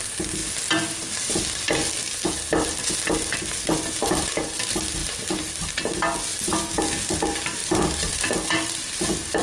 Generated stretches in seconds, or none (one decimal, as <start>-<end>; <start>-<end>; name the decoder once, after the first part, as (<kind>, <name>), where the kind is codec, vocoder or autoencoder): 5.0-5.7 (vocoder, BigVGAN v2); 7.6-9.4